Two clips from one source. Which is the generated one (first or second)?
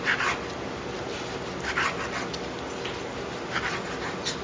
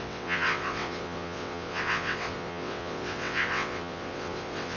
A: second